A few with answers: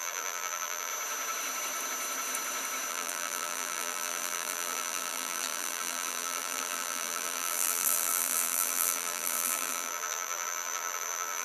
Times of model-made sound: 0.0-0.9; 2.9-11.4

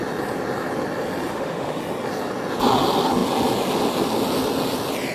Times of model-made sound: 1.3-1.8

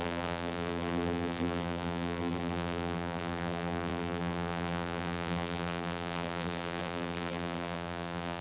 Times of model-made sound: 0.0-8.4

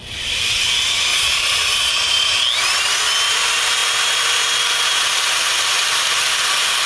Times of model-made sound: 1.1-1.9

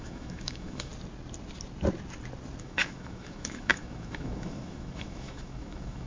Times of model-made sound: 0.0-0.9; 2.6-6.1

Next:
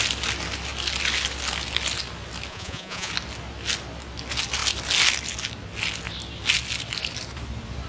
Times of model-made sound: 2.5-3.1

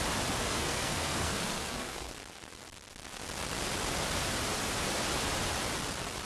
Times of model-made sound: 0.4-2.1